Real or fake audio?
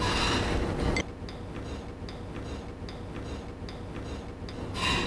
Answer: real